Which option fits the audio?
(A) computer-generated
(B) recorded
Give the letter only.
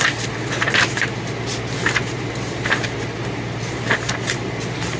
B